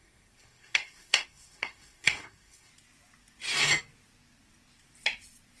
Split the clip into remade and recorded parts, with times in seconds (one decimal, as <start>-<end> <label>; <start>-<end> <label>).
0.0-2.7 remade; 2.7-5.6 recorded